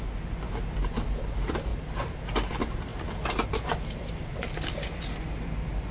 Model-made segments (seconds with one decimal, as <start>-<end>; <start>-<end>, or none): none